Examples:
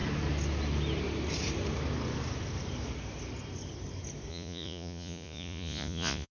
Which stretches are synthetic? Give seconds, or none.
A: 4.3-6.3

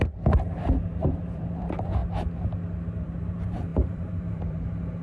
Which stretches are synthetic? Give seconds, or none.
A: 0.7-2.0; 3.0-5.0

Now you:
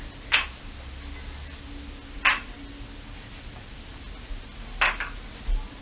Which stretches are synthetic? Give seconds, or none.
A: none

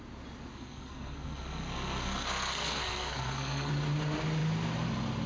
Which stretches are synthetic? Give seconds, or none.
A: 0.5-3.7

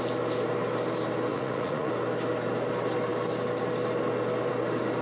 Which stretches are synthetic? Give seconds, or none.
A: 1.3-1.9

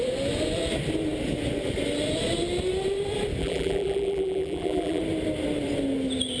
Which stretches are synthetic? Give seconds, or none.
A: 3.4-5.0

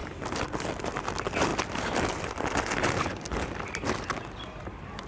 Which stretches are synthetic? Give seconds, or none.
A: none

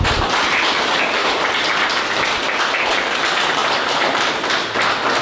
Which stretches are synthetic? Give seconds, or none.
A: none